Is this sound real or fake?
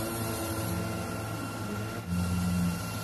real